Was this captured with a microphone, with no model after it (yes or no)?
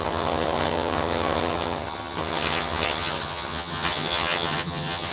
no